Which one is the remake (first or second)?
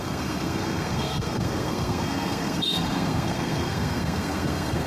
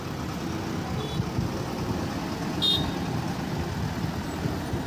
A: first